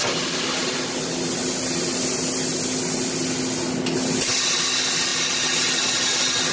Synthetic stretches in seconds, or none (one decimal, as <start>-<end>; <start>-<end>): none